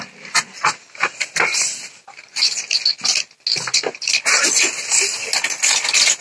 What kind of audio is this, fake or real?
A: real